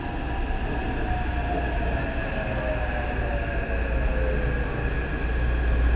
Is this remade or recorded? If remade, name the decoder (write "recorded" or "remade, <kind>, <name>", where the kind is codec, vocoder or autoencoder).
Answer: recorded